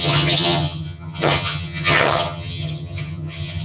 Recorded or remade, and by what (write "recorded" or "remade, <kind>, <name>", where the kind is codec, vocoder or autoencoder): remade, vocoder, HiFi-GAN